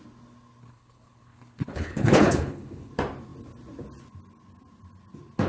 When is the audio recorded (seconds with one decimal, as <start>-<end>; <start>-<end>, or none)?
0.0-0.6; 2.9-5.5